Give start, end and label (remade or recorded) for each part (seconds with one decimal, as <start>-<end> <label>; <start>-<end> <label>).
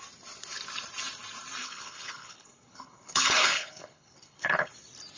0.0-1.6 recorded; 1.6-4.7 remade; 4.7-5.2 recorded